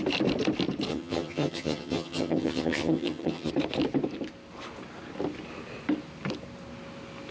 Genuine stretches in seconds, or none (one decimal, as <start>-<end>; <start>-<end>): 0.0-0.9; 3.5-7.3